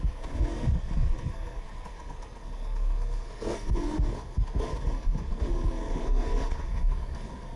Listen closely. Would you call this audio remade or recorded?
remade